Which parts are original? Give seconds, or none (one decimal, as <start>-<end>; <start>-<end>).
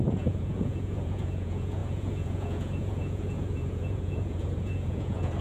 none